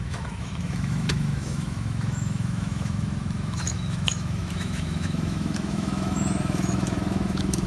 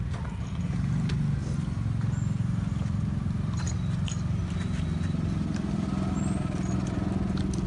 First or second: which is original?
second